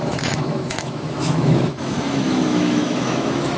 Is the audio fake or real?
fake